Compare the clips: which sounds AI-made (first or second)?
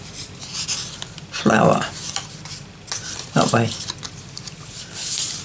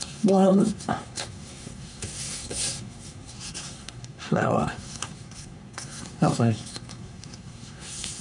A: second